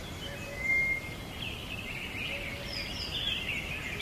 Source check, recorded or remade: recorded